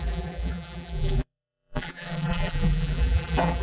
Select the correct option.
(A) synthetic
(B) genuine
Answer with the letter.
A